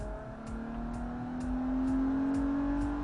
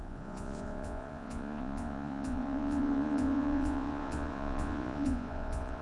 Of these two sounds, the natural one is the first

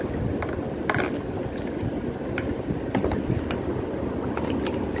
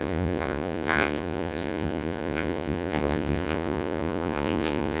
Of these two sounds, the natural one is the first